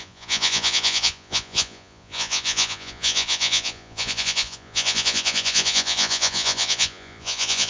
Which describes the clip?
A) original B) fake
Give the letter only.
B